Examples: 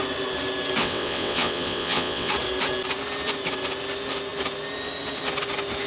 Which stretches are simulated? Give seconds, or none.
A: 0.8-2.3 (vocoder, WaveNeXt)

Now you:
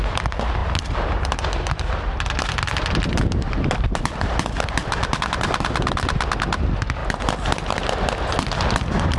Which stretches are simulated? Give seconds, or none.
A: none

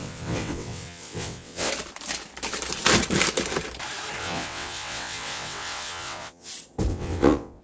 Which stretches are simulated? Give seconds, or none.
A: 0.0-1.7 (vocoder, WaveNeXt); 4.2-6.5; 6.9-7.6

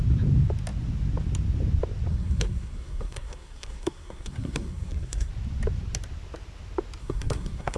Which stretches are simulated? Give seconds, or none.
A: 2.1-5.3 (codec, SNAC); 7.0-7.8

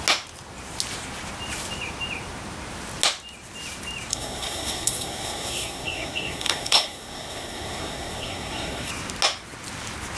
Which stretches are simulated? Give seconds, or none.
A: 4.1-8.9 (codec, SNAC)